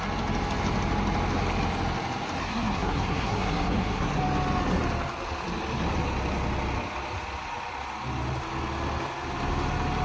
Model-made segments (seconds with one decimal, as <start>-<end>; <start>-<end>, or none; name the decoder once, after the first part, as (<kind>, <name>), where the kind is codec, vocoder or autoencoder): 2.4-4.2 (codec, SNAC)